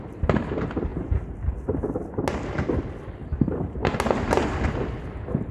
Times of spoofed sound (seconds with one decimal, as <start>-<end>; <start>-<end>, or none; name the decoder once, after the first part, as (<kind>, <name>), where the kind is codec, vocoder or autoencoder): 0.9-1.5 (vocoder, BigVGAN v2); 3.2-3.8